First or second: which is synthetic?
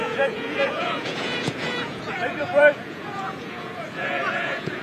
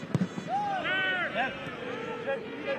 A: first